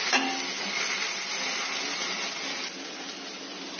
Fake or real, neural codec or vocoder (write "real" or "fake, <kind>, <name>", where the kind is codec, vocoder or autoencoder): real